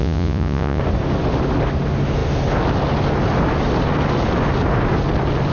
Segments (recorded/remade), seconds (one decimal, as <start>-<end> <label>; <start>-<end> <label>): 0.0-0.8 remade; 0.8-5.5 recorded